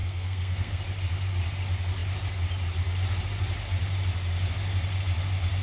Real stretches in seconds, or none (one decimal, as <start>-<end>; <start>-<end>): 0.8-5.6